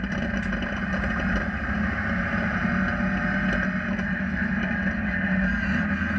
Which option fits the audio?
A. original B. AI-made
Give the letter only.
A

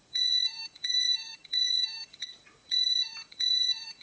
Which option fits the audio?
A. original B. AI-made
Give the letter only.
B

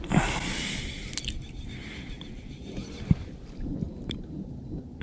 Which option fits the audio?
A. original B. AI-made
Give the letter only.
A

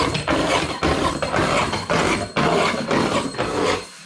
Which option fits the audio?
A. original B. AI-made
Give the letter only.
A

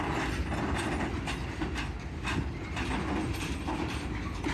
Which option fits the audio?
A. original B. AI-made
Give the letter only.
A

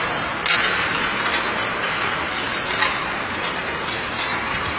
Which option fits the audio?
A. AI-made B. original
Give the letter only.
A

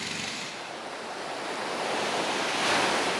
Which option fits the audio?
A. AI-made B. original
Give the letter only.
B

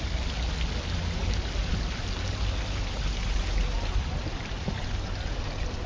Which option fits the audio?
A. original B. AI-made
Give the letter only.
A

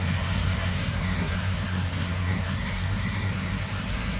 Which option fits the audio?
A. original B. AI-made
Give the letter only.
B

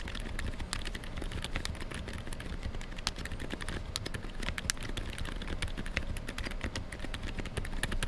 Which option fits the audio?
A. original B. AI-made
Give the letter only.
A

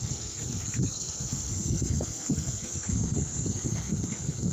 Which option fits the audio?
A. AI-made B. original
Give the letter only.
A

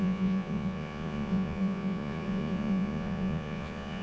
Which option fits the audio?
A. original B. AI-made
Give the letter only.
B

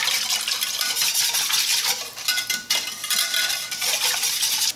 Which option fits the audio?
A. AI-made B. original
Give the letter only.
B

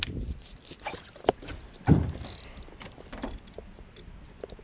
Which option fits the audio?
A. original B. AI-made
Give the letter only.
A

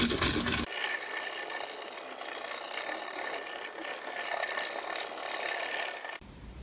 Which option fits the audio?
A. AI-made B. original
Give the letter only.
B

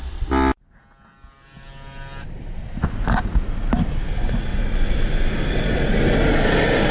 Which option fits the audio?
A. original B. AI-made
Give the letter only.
A